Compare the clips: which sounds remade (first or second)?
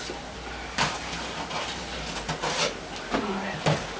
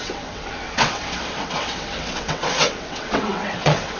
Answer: second